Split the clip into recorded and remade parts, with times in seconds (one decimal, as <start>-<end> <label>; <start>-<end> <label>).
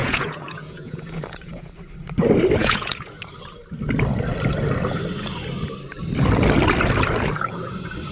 0.0-1.7 remade; 1.7-2.6 recorded; 2.6-3.2 remade; 3.2-8.1 recorded